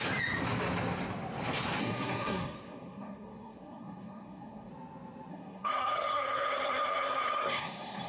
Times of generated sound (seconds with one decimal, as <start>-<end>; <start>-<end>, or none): 1.8-4.7; 5.3-8.1